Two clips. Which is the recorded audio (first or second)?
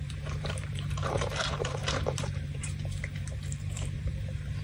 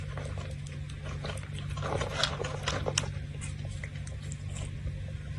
second